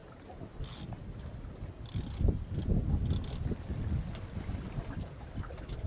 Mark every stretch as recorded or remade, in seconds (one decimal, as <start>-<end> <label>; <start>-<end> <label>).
0.0-5.9 recorded